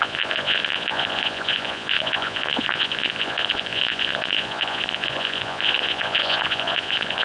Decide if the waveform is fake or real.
fake